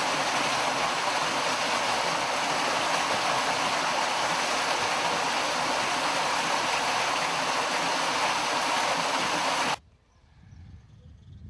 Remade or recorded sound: recorded